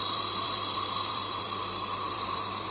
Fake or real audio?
fake